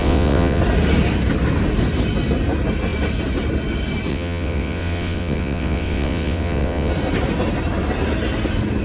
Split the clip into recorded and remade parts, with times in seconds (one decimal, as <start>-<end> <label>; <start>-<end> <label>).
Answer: 0.0-0.6 remade; 0.6-4.1 recorded; 4.1-6.9 remade; 6.9-8.8 recorded